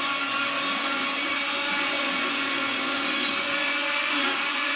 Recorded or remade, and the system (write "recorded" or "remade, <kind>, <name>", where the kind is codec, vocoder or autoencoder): remade, vocoder, Vocos